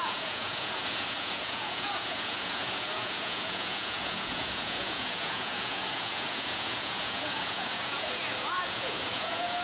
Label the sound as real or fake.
fake